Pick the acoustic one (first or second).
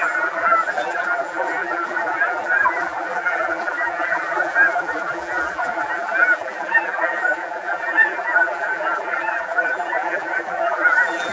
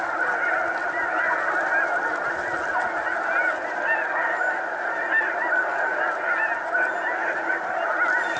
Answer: second